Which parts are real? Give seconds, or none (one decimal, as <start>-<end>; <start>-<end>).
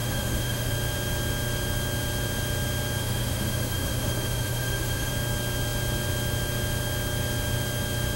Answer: 0.7-3.0; 5.1-8.2